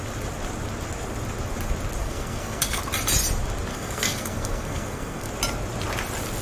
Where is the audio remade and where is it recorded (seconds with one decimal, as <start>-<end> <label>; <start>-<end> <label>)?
0.0-2.0 recorded; 2.0-2.8 remade; 2.8-3.7 recorded; 3.7-5.3 remade; 5.3-6.4 recorded